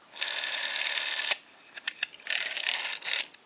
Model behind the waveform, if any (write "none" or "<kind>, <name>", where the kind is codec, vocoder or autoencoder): none